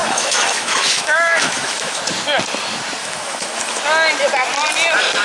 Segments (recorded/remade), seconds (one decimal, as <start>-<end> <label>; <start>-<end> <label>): 0.0-2.0 remade; 2.0-3.0 recorded; 3.0-3.8 remade; 3.8-5.2 recorded